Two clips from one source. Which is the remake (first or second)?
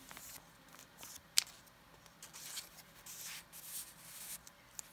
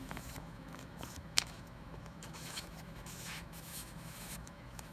second